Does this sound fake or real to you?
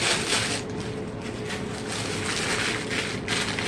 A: real